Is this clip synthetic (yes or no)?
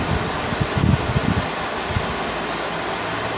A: no